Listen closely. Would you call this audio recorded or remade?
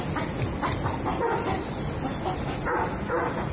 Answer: recorded